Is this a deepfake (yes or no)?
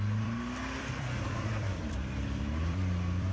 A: yes